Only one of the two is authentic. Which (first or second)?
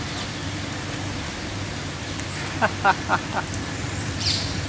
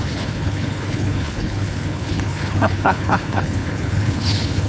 first